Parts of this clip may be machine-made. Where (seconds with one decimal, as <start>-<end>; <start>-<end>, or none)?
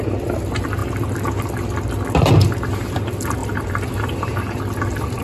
3.4-4.6